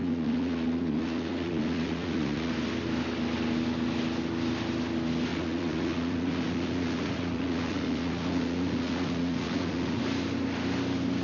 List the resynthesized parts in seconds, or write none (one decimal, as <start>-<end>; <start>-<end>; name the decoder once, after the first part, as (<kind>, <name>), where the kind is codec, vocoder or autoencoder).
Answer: 0.0-2.5 (vocoder, Vocos); 5.3-10.0